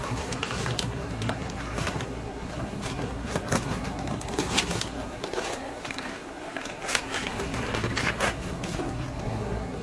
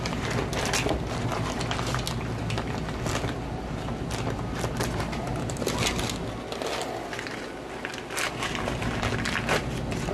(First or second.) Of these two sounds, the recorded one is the second